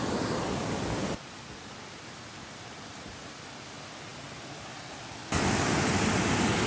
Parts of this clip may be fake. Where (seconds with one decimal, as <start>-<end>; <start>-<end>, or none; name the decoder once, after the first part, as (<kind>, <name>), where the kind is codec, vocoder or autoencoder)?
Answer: none